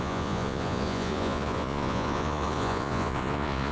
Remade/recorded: remade